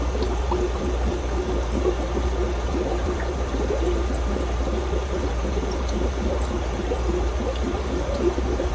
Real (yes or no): no